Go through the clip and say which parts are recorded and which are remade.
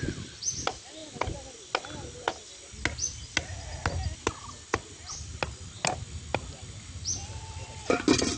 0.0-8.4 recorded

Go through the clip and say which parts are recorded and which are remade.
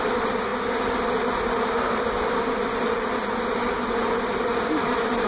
0.0-5.3 recorded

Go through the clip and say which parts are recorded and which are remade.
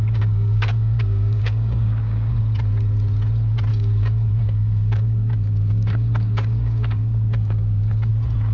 0.0-2.4 remade; 2.4-3.7 recorded; 3.7-8.1 remade; 8.1-8.5 recorded